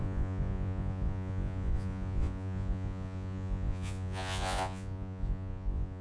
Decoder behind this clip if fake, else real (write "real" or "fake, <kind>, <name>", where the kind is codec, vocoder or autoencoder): fake, vocoder, Vocos